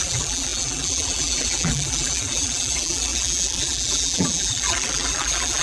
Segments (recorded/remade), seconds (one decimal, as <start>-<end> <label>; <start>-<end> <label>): 0.0-5.6 remade